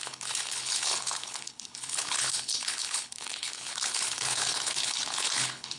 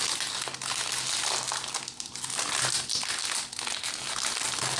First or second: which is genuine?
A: second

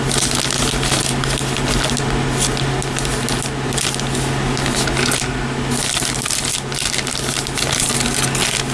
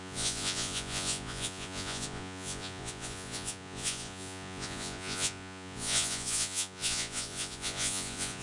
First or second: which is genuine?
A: first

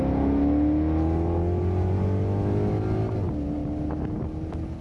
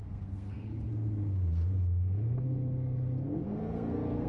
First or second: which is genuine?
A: first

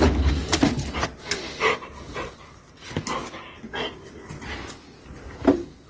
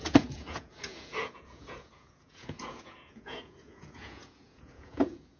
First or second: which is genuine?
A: first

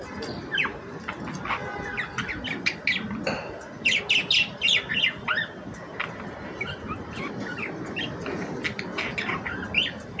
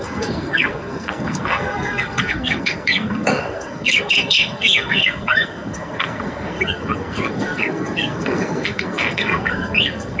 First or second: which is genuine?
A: first